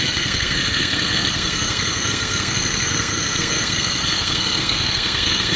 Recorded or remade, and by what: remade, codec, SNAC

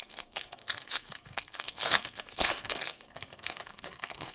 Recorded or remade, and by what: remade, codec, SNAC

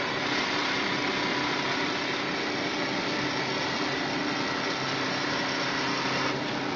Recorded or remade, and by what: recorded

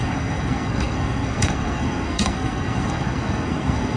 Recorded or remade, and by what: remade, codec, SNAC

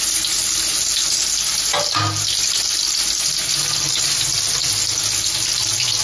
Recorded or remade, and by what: recorded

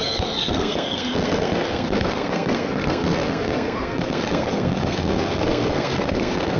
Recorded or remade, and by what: remade, codec, SNAC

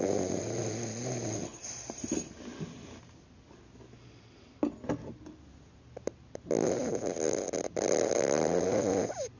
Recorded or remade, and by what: recorded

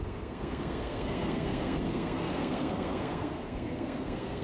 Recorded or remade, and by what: remade, codec, SNAC